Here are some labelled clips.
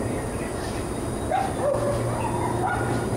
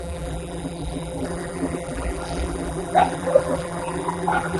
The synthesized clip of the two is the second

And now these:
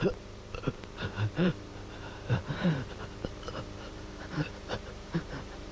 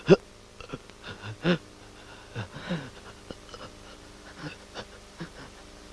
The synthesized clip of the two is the first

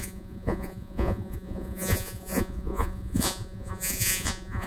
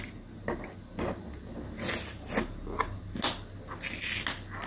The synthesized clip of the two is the first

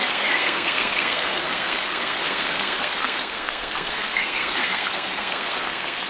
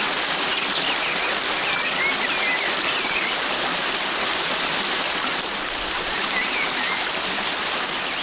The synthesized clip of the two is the first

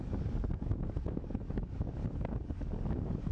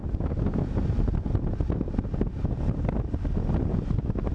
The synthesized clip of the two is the first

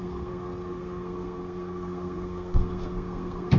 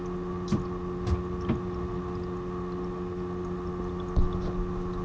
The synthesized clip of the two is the first